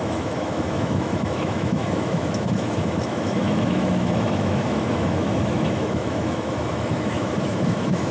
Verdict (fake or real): fake